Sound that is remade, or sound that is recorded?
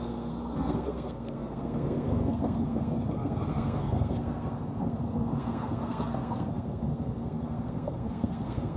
remade